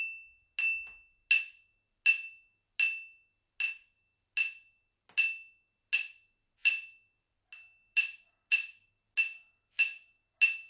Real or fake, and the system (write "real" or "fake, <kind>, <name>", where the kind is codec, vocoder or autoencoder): real